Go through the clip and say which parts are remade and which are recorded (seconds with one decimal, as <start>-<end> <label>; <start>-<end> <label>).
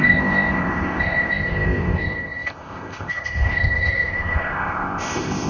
0.0-5.5 remade